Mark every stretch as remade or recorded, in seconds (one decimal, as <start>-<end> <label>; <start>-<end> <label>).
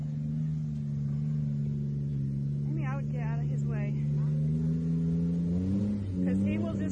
0.0-6.9 recorded